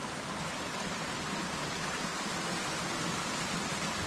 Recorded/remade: recorded